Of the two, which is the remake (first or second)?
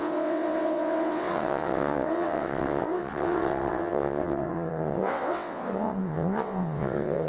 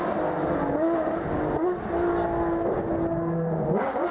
first